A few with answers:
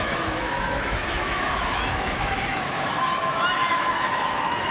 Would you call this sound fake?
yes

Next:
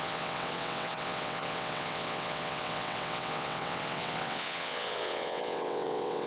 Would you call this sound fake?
yes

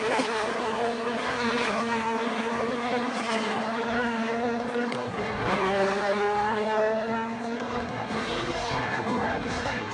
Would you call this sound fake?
yes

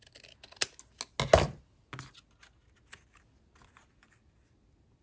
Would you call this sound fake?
no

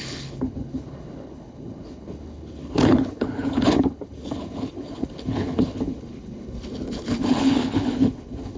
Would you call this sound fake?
yes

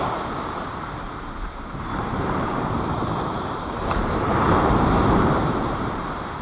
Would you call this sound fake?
yes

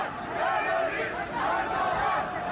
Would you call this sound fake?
no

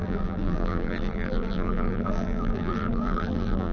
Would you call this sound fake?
yes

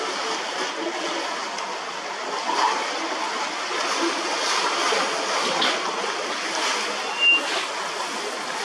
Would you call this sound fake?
no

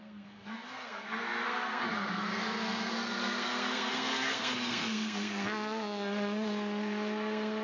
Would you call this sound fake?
yes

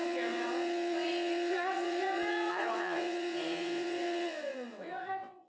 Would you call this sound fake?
yes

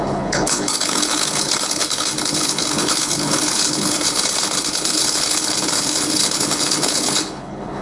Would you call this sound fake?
yes